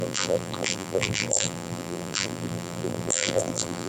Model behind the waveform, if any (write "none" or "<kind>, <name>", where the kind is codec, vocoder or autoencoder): vocoder, BigVGAN v2